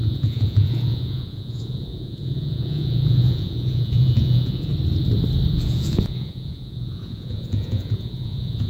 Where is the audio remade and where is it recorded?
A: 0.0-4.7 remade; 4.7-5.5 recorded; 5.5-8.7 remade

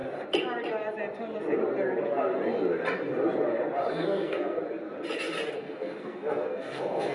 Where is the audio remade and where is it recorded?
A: 0.0-3.9 recorded; 3.9-4.6 remade; 4.6-5.5 recorded; 5.5-7.1 remade

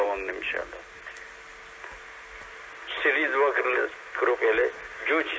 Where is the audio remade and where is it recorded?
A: 0.0-5.4 recorded

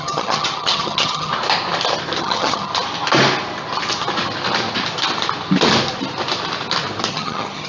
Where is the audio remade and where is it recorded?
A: 0.0-1.3 remade; 1.3-2.2 recorded; 2.2-2.7 remade; 2.7-7.1 recorded; 7.1-7.7 remade

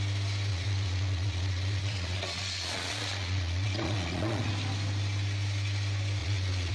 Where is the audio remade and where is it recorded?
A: 0.0-0.5 recorded; 0.5-4.5 remade; 4.5-6.2 recorded; 6.2-6.7 remade

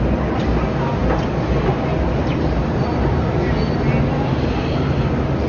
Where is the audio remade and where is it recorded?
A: 0.0-5.5 recorded